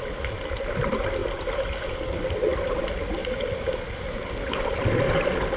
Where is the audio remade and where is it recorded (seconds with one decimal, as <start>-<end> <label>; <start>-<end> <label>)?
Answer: 0.0-5.6 recorded